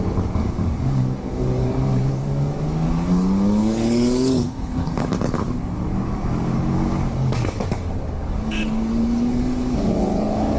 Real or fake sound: fake